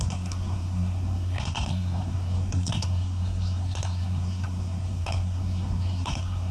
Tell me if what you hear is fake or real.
fake